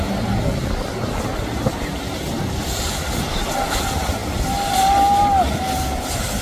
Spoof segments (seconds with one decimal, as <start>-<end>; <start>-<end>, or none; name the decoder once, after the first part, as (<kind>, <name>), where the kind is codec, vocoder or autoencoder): none